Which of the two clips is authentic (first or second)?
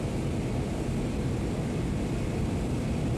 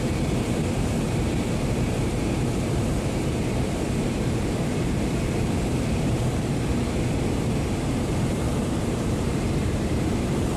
first